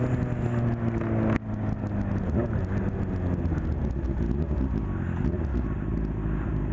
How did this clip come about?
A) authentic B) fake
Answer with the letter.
A